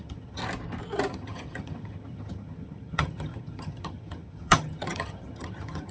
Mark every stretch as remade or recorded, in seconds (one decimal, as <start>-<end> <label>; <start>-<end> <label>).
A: 0.0-0.4 remade; 0.4-1.1 recorded; 1.1-5.9 remade